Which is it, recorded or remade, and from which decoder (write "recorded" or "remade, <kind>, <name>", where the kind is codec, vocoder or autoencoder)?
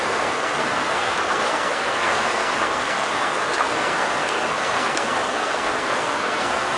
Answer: remade, codec, SNAC